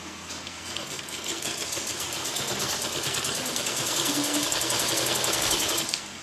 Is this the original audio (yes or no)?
no